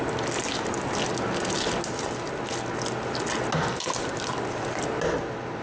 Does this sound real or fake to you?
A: real